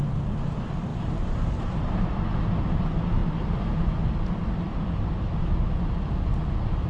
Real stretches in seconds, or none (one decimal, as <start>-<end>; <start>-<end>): 0.0-0.9; 2.2-6.9